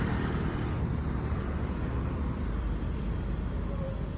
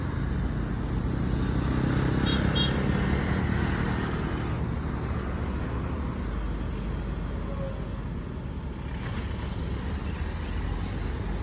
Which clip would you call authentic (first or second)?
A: second